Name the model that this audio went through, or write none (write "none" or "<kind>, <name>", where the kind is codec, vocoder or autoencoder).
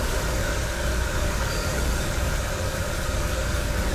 codec, DAC